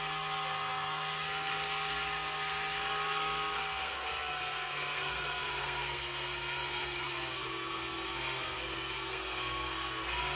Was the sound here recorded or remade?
remade